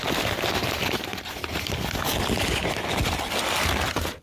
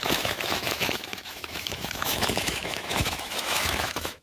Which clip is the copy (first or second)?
second